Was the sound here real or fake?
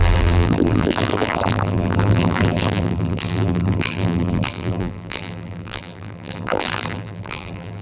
fake